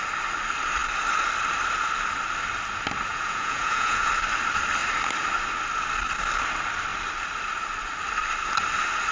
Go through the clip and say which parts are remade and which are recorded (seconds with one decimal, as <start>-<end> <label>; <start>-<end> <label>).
0.0-3.1 recorded; 3.1-4.1 remade; 4.1-9.1 recorded